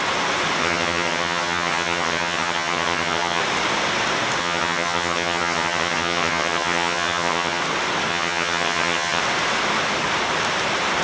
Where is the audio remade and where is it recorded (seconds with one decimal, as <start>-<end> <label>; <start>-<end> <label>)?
0.0-0.6 recorded; 0.6-3.4 remade; 3.4-4.4 recorded; 4.4-7.6 remade; 7.6-8.1 recorded; 8.1-9.2 remade; 9.2-11.0 recorded